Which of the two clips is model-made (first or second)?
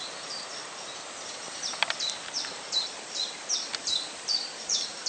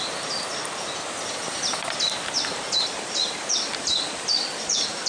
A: first